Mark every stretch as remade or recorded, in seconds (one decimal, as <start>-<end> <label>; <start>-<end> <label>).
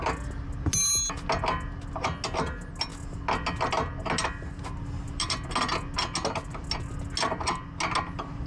0.0-8.5 recorded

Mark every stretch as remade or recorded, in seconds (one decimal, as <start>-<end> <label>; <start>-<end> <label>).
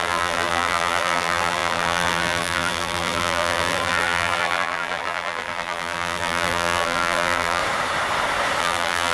0.0-7.6 remade; 7.6-8.6 recorded; 8.6-9.1 remade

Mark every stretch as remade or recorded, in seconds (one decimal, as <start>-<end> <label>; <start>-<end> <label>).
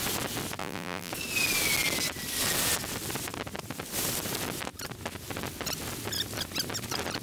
0.0-0.6 recorded; 0.6-1.1 remade; 1.1-7.2 recorded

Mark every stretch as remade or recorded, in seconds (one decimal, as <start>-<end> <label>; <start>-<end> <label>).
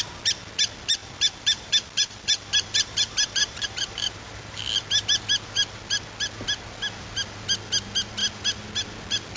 0.0-1.0 recorded; 1.0-4.6 remade; 4.6-9.4 recorded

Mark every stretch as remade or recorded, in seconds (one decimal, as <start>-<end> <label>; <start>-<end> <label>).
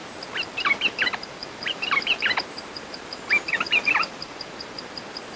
0.0-0.6 recorded; 0.6-5.4 remade